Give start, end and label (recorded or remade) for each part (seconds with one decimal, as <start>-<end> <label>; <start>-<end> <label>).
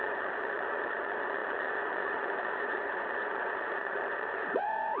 0.0-5.0 remade